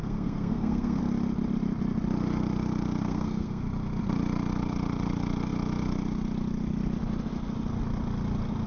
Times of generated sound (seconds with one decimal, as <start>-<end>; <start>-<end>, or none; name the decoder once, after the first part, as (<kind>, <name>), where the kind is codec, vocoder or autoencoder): 0.0-1.0 (codec, SNAC); 3.0-3.6